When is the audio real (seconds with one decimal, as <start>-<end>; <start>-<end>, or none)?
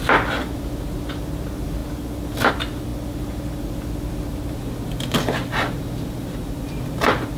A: 0.0-7.4